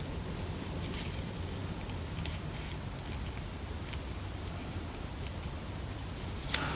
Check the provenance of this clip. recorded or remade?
recorded